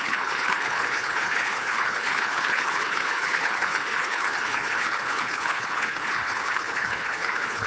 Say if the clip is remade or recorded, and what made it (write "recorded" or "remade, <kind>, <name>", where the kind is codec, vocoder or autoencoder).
remade, codec, HILCodec